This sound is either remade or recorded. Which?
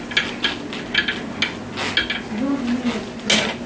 recorded